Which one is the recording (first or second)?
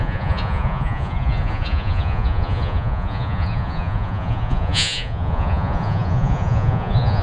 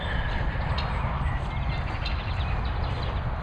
second